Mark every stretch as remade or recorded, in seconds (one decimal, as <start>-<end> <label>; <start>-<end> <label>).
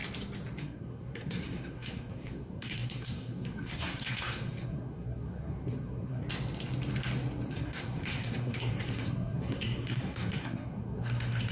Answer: 0.0-0.6 recorded; 0.6-6.2 remade; 6.2-7.5 recorded; 7.5-11.5 remade